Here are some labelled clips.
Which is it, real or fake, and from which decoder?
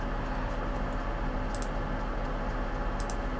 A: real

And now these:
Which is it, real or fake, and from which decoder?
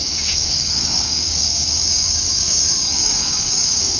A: fake, codec, DAC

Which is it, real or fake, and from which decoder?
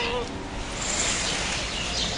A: real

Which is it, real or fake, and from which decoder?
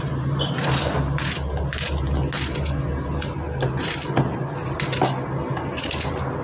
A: real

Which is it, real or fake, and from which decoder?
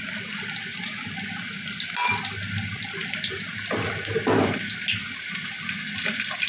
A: real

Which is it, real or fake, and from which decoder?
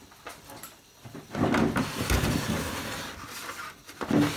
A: fake, vocoder, BigVGAN v2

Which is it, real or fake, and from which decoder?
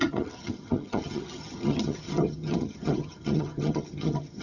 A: fake, vocoder, HiFi-GAN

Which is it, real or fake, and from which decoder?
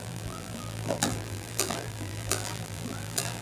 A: fake, vocoder, BigVGAN v2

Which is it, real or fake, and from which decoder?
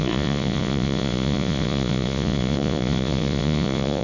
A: fake, vocoder, Vocos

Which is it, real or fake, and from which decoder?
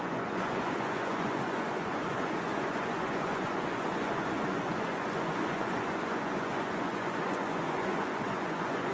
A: fake, vocoder, Vocos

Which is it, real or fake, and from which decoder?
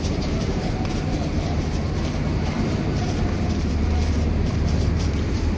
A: fake, vocoder, BigVGAN v2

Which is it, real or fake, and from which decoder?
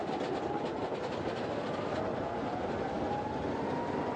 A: real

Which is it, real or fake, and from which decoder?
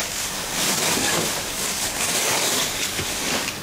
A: fake, codec, DAC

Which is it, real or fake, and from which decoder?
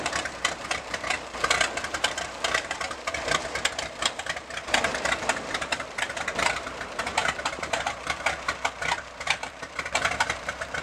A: fake, vocoder, BigVGAN v2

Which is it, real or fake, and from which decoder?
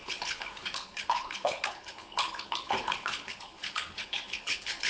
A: fake, codec, HILCodec